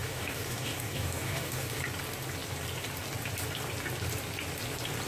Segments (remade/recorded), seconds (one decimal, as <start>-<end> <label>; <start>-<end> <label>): 0.0-1.8 remade; 1.8-5.1 recorded